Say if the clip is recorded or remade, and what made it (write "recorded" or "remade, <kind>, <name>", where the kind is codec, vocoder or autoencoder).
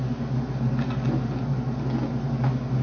recorded